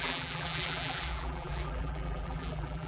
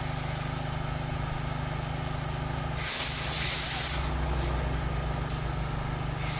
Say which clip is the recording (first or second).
second